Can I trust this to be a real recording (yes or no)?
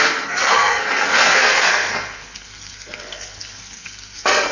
no